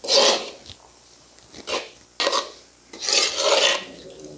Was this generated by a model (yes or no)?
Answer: no